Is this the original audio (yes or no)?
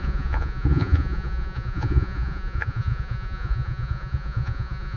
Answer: no